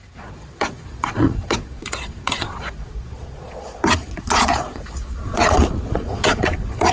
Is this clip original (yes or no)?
no